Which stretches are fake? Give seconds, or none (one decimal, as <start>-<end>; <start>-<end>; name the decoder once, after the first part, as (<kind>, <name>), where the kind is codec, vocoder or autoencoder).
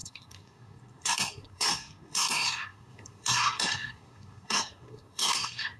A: 0.0-5.8 (codec, SNAC)